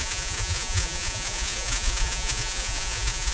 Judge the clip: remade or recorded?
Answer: remade